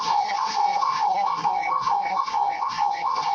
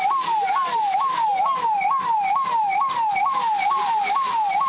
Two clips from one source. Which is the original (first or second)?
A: second